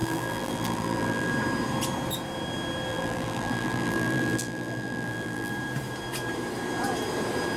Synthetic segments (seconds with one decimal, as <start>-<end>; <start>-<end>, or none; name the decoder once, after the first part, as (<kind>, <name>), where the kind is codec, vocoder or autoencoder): 0.0-1.3 (vocoder, BigVGAN v2); 2.9-5.5